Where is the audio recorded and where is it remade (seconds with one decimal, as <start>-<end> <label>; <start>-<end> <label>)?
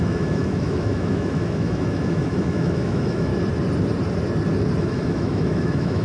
0.0-3.3 remade; 3.3-4.8 recorded; 4.8-6.0 remade